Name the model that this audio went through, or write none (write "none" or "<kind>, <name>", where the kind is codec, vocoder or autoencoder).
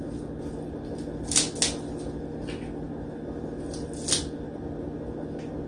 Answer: none